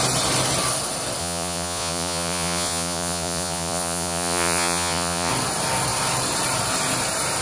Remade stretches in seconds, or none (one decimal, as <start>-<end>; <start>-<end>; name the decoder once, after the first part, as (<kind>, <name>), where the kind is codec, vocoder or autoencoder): 1.2-5.3 (vocoder, Vocos)